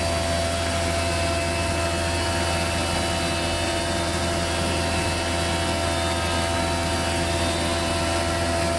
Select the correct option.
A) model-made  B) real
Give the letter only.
B